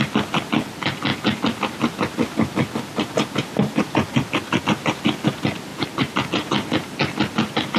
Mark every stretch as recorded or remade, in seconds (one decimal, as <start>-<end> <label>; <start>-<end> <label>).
0.0-5.7 recorded; 5.7-6.3 remade; 6.3-7.8 recorded